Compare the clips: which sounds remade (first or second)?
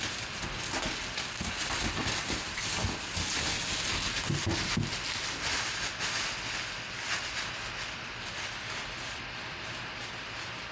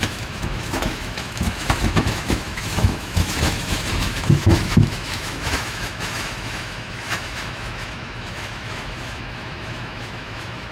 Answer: second